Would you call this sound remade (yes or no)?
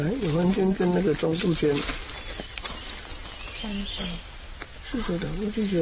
no